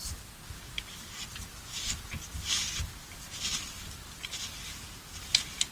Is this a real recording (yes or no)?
yes